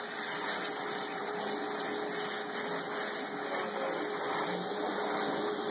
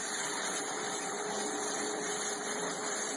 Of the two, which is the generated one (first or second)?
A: second